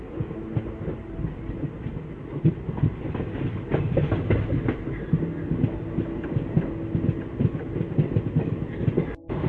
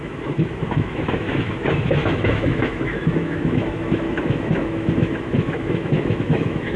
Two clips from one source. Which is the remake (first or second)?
second